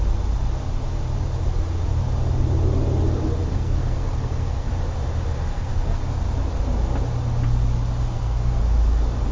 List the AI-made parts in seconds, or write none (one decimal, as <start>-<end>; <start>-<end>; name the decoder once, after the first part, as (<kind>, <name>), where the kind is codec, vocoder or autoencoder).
3.5-4.7 (codec, SNAC); 5.5-6.0; 8.0-8.6